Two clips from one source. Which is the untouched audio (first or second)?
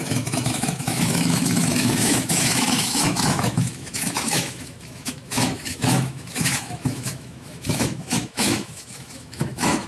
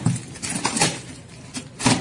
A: second